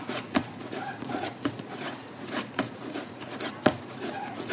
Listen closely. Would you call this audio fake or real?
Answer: fake